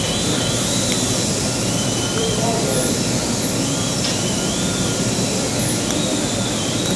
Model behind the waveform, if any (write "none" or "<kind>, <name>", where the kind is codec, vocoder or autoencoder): none